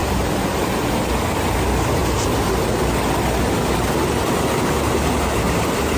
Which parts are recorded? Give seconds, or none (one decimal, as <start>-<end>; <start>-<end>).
0.0-6.0